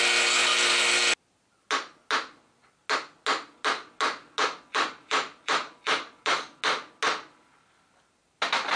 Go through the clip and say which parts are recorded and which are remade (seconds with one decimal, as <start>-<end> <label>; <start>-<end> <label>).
0.0-4.7 recorded; 4.7-6.1 remade; 6.1-8.8 recorded

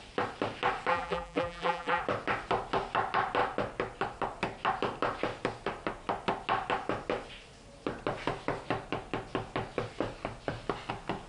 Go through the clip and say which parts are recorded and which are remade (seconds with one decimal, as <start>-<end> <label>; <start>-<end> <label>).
0.0-0.9 recorded; 0.9-2.0 remade; 2.0-11.3 recorded

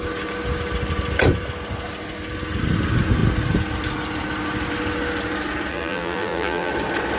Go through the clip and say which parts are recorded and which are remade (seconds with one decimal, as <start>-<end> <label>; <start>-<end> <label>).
0.0-5.7 recorded; 5.7-6.7 remade; 6.7-7.2 recorded

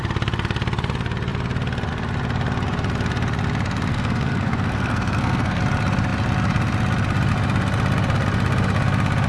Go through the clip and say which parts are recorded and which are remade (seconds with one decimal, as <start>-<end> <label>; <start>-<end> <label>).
0.0-3.9 recorded; 3.9-5.6 remade; 5.6-9.3 recorded

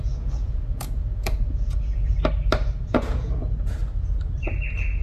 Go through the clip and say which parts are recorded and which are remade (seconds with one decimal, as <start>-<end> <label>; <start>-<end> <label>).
0.0-2.1 remade; 2.1-2.9 recorded; 2.9-3.8 remade; 3.8-5.0 recorded